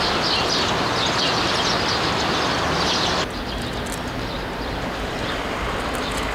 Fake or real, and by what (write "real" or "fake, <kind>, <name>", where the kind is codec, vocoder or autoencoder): real